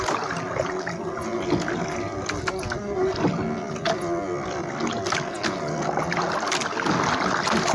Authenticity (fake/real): real